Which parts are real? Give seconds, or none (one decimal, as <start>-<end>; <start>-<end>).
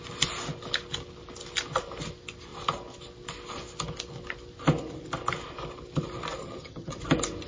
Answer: 0.0-6.4; 7.0-7.5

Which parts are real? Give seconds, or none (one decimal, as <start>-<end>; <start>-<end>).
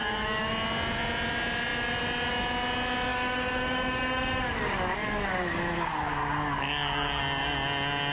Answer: 0.5-3.1; 5.3-6.2; 7.2-8.1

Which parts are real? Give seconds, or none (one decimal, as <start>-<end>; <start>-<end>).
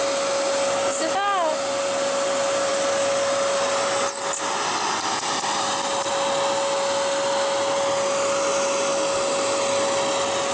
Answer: 0.0-10.5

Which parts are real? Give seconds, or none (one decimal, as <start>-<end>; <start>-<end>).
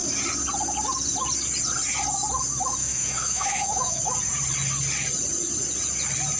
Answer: 0.0-2.8; 4.0-6.4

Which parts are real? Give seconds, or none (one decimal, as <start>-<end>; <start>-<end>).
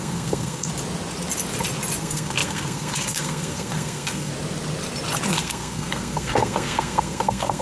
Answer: 0.7-2.0; 4.3-5.3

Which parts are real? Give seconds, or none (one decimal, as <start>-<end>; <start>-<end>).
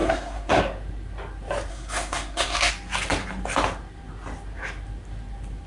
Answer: 0.6-1.7; 2.7-5.7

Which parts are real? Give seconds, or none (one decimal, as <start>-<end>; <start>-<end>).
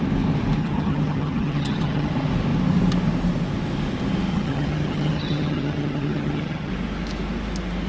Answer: 0.0-0.6; 2.1-4.3; 6.7-7.9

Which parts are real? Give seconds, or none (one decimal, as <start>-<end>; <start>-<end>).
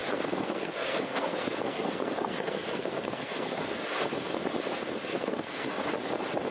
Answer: 3.7-5.1; 5.7-6.5